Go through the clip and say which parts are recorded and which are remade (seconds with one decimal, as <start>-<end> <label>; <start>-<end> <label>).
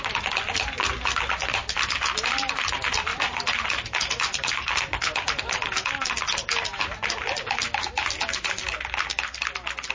0.0-9.9 recorded